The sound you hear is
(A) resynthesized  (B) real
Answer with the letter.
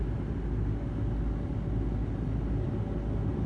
B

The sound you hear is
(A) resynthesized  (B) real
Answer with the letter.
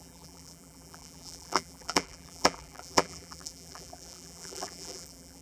A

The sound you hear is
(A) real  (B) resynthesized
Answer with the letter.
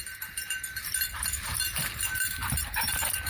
B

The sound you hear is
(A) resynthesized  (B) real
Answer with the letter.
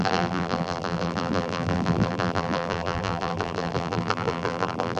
A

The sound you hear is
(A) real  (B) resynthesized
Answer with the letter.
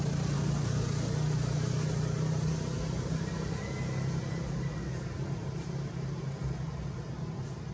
A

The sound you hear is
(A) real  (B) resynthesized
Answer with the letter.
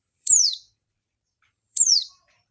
B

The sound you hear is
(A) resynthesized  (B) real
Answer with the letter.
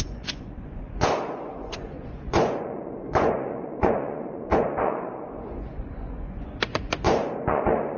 A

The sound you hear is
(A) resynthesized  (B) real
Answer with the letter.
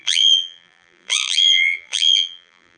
A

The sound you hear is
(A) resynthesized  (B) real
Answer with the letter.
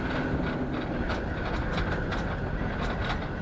B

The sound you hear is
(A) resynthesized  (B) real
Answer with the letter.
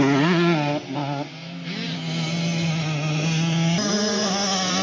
B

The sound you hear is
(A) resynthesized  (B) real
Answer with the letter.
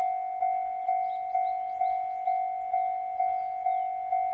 B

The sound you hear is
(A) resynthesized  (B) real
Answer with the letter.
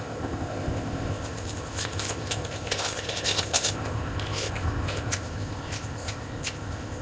A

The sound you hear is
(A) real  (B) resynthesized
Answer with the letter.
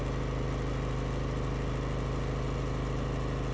A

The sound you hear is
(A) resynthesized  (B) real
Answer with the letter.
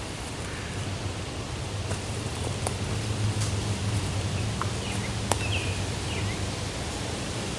B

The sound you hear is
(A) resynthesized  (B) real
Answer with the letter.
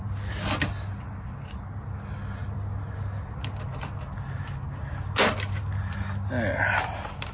B